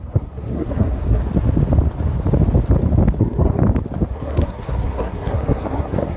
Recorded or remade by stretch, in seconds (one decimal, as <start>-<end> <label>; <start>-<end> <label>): 0.0-1.2 remade; 1.2-3.2 recorded; 3.2-3.6 remade; 3.6-4.1 recorded; 4.1-6.2 remade